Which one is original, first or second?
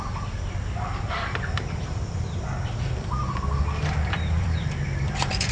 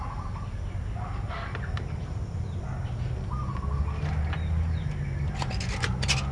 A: second